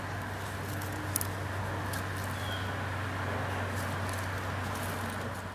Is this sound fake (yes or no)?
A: no